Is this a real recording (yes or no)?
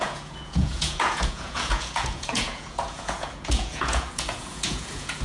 no